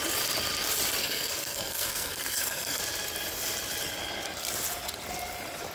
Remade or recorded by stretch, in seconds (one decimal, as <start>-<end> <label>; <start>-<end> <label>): 0.0-1.0 recorded; 1.0-2.8 remade; 2.8-5.7 recorded